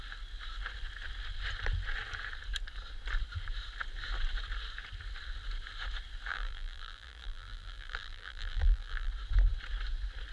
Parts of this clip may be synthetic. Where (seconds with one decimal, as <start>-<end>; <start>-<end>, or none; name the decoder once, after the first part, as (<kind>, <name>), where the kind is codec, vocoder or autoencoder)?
6.3-9.1 (vocoder, BigVGAN v2)